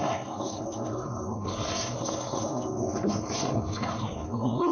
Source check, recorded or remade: remade